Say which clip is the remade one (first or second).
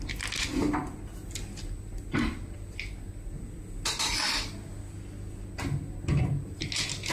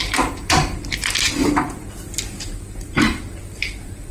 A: second